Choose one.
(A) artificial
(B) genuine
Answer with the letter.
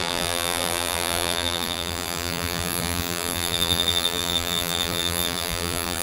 A